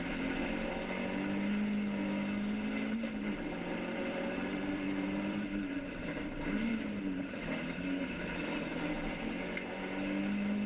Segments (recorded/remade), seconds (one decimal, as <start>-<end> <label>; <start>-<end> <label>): 0.0-4.0 recorded; 4.0-6.0 remade; 6.0-6.7 recorded; 6.7-8.2 remade; 8.2-10.7 recorded